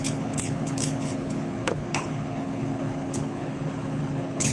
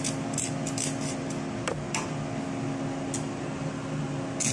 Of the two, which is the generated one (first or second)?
first